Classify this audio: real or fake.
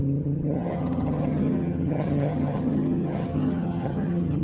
fake